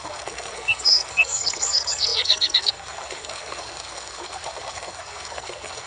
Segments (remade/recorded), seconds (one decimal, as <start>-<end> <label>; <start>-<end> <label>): 0.0-5.9 remade